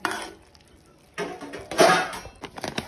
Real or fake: real